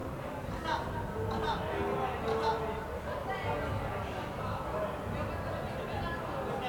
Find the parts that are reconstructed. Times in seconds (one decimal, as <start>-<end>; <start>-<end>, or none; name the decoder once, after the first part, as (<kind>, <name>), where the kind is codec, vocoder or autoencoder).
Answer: none